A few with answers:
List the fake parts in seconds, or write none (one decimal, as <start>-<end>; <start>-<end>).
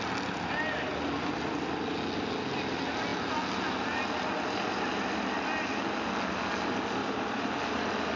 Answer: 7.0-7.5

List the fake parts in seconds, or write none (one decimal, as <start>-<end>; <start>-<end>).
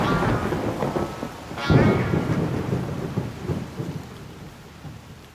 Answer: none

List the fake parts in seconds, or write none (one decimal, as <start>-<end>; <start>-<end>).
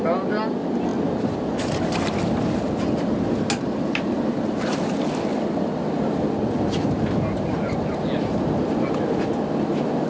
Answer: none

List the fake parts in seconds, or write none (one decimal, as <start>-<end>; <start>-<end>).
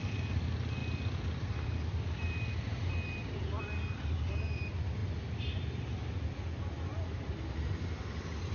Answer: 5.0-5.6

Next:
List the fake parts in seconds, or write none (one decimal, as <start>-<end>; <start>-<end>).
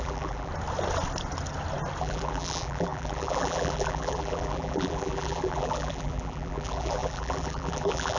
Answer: 0.0-0.5; 2.0-8.2